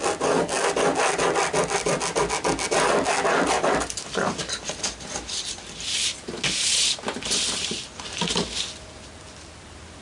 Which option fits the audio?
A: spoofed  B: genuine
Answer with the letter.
B